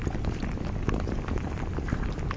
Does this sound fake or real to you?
real